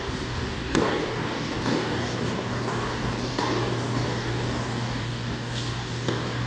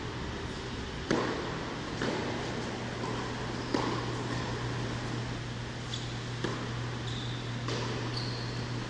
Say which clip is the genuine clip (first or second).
second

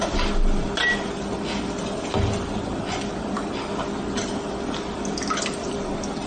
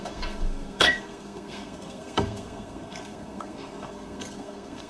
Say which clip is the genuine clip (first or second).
first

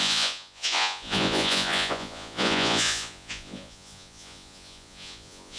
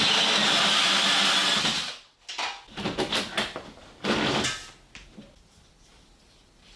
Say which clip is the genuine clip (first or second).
second